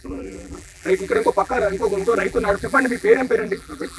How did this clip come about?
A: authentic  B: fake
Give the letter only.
B